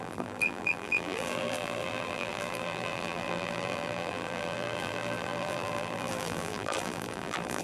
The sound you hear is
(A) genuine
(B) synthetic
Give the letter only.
B